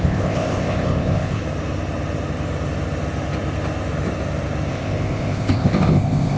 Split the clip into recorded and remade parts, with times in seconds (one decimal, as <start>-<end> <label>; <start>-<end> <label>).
0.0-1.4 remade; 1.4-4.7 recorded; 4.7-6.4 remade